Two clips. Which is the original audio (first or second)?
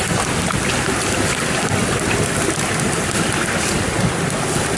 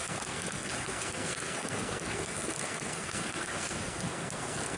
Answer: first